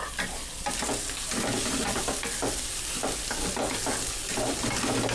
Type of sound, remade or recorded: recorded